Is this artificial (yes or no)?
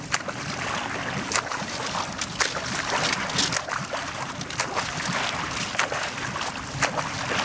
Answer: no